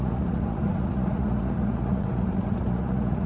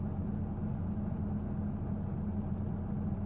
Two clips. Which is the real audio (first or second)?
second